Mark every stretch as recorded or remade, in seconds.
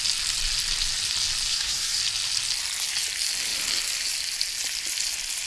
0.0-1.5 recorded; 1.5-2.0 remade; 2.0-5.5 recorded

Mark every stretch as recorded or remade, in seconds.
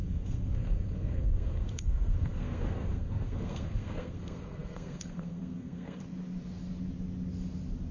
0.0-6.0 remade; 6.0-7.9 recorded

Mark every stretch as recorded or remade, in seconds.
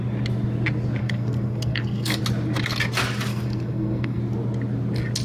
0.0-1.0 recorded; 1.0-2.2 remade; 2.2-3.3 recorded; 3.3-4.2 remade; 4.2-5.2 recorded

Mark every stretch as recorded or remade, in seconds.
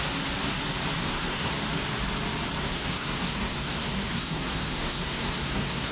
0.0-1.0 recorded; 1.0-1.5 remade; 1.5-2.6 recorded; 2.6-5.9 remade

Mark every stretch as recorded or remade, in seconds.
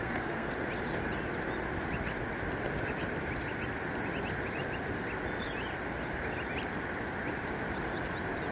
0.0-0.5 remade; 0.5-8.5 recorded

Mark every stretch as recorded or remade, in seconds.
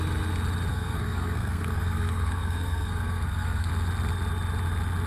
0.0-0.7 recorded; 0.7-3.7 remade; 3.7-5.1 recorded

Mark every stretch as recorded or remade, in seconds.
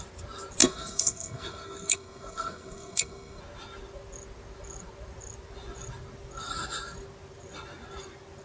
0.0-0.6 recorded; 0.6-3.4 remade; 3.4-8.4 recorded